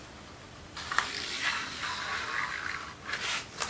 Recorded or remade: recorded